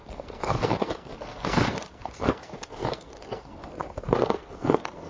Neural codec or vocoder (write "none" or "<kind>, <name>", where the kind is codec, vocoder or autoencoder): codec, SNAC